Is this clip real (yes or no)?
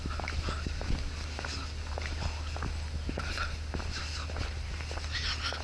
yes